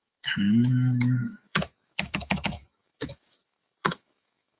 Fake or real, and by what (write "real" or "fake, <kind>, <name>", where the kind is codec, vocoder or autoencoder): fake, autoencoder, DAC-VAE